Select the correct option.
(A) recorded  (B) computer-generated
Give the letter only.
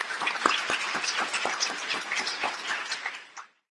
B